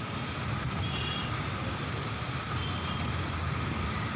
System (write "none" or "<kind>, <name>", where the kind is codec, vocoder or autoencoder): none